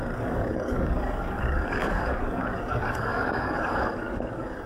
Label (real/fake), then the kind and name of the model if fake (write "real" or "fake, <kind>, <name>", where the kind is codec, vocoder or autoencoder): fake, codec, DAC